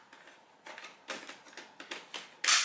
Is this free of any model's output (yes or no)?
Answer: yes